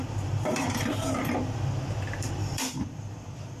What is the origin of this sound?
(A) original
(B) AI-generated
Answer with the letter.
B